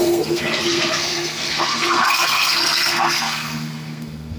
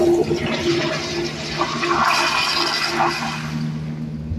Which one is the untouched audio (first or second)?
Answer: second